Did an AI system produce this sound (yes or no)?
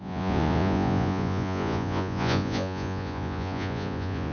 yes